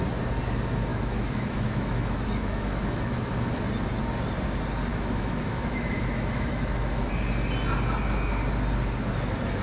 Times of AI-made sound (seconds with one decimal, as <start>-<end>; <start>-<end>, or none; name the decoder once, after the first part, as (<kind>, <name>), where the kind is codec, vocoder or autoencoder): 0.9-3.5 (autoencoder, DAC-VAE); 4.9-7.1